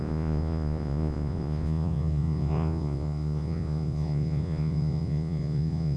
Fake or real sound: fake